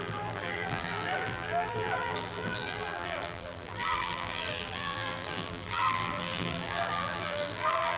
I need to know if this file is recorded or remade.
remade